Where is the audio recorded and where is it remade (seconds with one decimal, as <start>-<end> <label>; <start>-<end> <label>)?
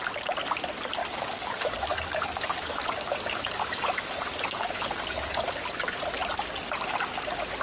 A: 0.0-1.0 recorded; 1.0-5.4 remade; 5.4-7.6 recorded